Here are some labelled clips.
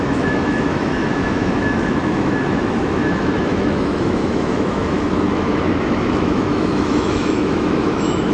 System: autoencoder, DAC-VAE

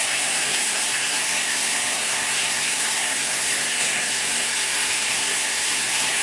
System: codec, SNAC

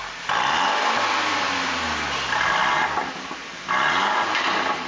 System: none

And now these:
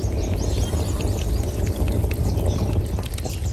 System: none